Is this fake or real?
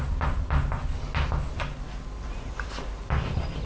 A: real